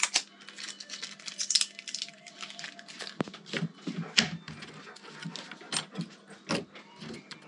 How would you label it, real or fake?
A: real